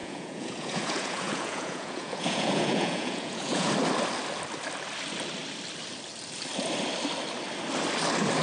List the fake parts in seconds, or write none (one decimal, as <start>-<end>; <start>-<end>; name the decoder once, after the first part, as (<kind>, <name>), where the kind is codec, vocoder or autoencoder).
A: 0.0-3.7 (vocoder, Vocos)